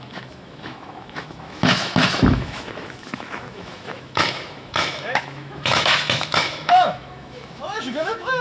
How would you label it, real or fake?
fake